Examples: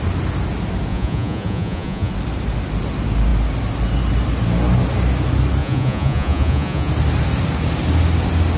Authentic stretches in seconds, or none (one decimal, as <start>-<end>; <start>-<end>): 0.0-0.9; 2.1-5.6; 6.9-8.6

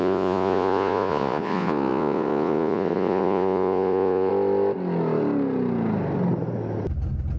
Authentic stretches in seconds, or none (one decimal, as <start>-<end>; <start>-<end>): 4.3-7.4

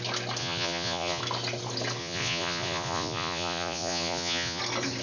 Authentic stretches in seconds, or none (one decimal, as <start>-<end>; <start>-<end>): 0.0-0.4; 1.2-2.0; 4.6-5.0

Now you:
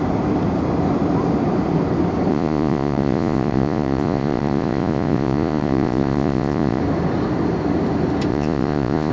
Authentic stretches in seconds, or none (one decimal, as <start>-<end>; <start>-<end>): 0.0-2.3; 6.8-8.3

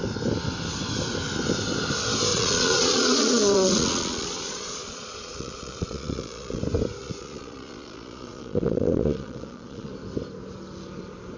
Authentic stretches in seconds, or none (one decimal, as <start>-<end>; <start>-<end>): 0.0-2.3; 6.6-7.0; 9.9-11.4

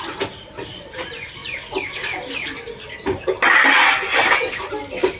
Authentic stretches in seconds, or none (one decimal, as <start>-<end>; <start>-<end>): 0.0-5.2

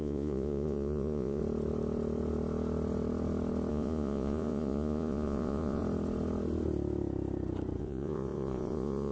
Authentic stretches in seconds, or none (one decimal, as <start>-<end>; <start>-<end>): 1.4-3.7; 5.8-7.8

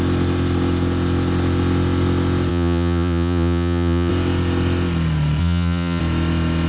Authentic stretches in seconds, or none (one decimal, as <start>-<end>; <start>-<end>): 0.0-2.5; 4.1-5.4; 6.0-6.7